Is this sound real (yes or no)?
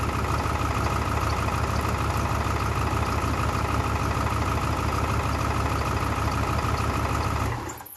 yes